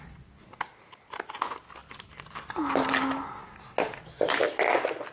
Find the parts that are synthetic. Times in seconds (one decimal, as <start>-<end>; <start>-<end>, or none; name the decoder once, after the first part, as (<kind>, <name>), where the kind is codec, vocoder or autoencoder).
none